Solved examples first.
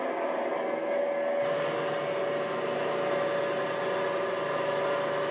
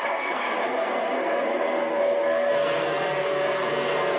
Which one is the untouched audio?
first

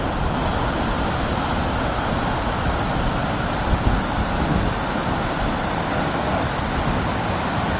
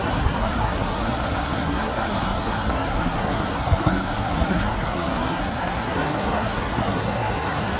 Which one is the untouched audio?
first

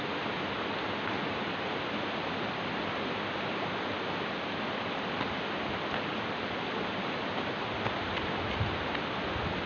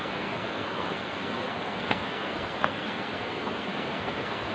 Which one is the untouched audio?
first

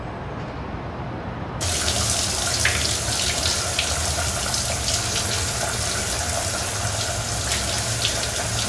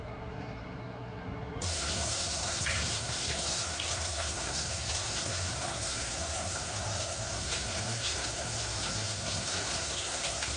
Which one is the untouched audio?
first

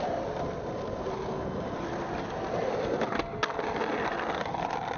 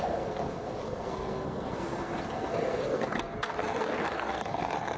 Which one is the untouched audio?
first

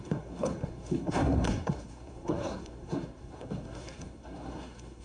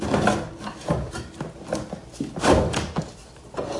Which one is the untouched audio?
second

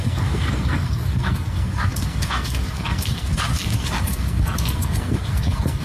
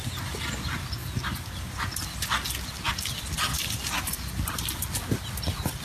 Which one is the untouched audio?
second